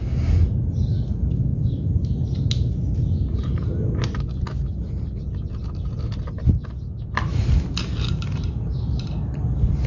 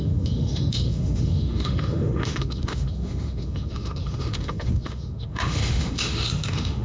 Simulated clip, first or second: second